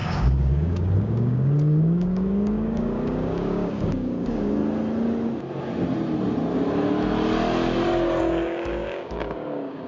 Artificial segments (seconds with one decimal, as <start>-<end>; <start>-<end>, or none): 0.0-4.6; 8.2-9.9